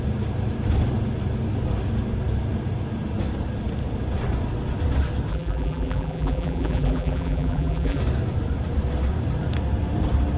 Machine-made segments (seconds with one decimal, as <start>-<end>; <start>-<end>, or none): 5.3-8.0